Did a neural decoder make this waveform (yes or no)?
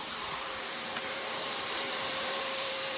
yes